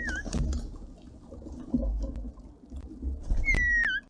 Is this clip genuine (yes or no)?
yes